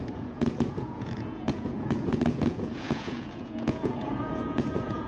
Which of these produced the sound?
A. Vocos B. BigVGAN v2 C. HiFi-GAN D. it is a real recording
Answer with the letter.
A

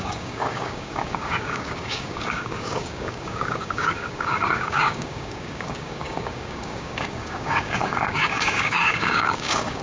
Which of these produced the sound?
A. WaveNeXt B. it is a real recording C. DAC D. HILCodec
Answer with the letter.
C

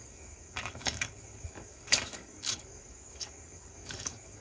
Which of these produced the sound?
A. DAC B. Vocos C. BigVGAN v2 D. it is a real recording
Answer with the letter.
A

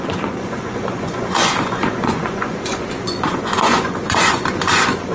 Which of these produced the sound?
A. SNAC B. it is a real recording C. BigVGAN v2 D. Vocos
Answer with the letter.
D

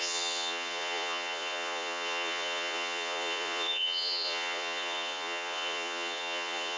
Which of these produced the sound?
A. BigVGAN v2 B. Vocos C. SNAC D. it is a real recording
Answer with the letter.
B